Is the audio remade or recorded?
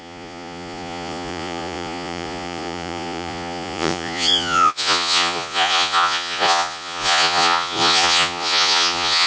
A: remade